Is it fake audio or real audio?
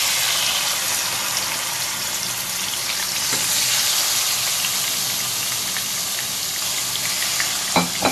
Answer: real